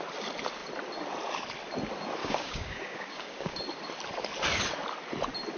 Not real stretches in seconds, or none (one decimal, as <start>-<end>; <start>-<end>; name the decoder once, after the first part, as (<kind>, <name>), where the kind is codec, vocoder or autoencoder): 2.2-3.6 (codec, DAC)